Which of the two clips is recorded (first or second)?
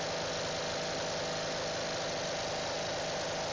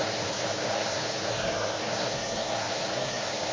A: first